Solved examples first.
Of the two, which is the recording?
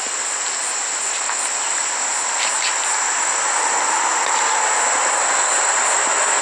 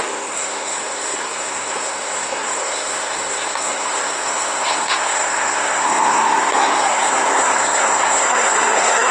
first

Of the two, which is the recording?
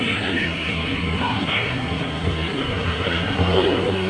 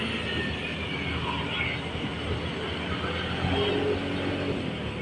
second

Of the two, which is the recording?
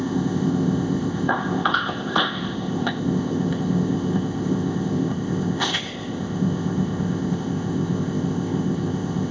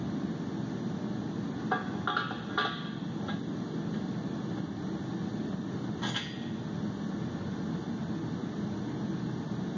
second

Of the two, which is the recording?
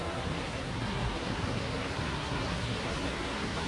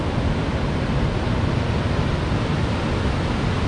second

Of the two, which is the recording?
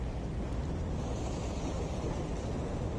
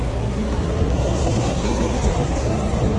first